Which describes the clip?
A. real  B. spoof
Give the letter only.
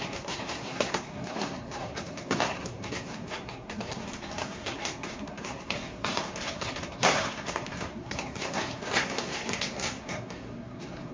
B